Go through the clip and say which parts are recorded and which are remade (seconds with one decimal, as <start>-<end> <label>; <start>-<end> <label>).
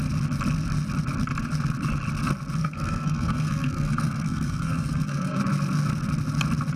0.0-2.6 recorded; 2.6-5.4 remade; 5.4-6.8 recorded